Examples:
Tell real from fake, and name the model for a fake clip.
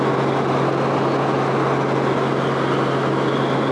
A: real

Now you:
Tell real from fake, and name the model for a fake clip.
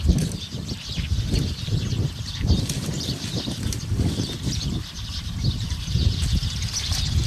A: fake, vocoder, BigVGAN v2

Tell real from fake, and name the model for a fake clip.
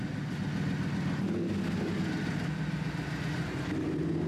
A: real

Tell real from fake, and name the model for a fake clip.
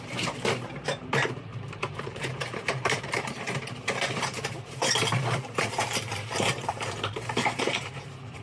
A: fake, vocoder, BigVGAN v2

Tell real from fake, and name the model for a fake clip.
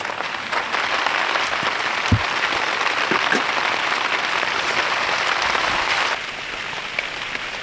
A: real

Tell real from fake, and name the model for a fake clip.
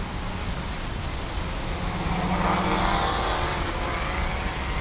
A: real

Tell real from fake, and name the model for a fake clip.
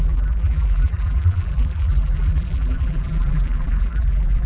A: fake, vocoder, BigVGAN v2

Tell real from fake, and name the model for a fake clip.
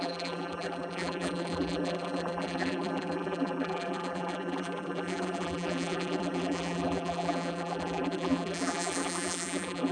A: fake, vocoder, BigVGAN v2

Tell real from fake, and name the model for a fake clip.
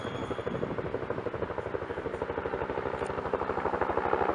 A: real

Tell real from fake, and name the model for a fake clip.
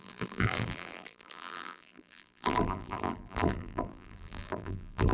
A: fake, vocoder, BigVGAN v2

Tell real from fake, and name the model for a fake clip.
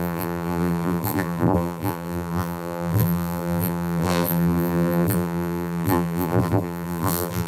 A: fake, vocoder, BigVGAN v2